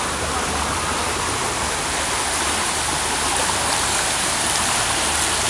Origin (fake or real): real